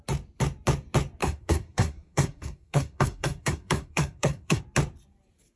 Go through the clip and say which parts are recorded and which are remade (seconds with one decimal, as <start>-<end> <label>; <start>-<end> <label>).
0.0-1.2 recorded; 1.2-4.6 remade; 4.6-5.6 recorded